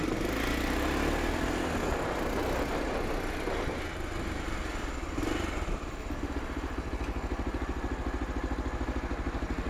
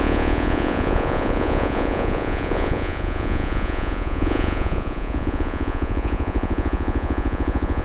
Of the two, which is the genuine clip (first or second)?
first